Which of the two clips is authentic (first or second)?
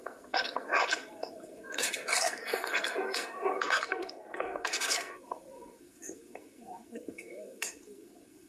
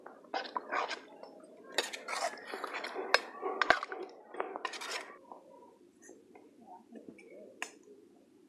second